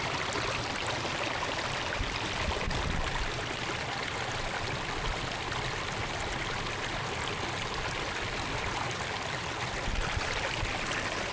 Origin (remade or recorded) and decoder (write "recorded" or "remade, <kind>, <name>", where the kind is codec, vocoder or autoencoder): recorded